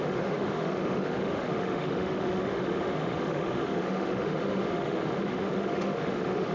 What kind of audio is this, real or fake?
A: fake